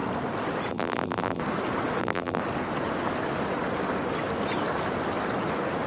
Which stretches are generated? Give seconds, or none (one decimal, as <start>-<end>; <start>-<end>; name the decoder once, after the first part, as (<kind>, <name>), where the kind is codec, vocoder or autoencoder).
0.7-1.4 (vocoder, BigVGAN v2); 2.0-2.4